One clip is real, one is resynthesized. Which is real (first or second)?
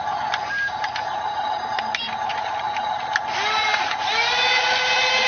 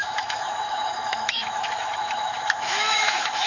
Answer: first